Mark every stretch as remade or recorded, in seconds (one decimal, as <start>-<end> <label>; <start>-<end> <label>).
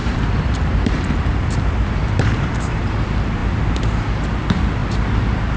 0.0-2.9 remade; 2.9-5.6 recorded